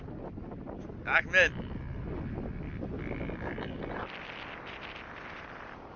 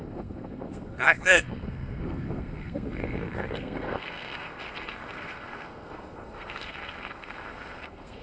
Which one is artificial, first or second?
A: second